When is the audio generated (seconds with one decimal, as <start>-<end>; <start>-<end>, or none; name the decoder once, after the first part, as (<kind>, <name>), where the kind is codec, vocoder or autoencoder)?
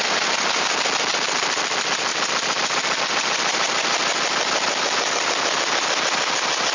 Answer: none